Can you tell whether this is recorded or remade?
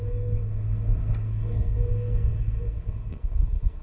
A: remade